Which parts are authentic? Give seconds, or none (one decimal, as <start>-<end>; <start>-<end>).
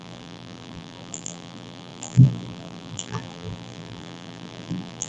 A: none